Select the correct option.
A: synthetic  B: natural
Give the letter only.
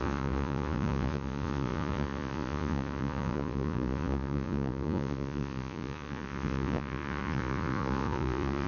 A